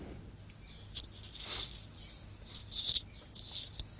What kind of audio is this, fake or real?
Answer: real